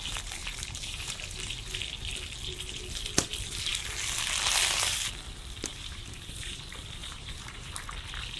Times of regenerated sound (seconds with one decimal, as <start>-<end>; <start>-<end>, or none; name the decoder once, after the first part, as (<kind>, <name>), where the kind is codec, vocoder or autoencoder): 0.4-1.2 (vocoder, BigVGAN v2); 5.7-6.3; 7.0-7.7